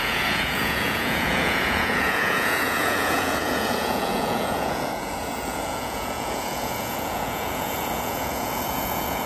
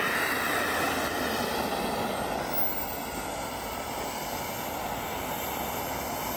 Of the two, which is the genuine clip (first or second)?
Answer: second